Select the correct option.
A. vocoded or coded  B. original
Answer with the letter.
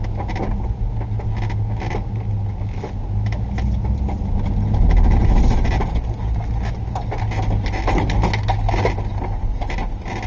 B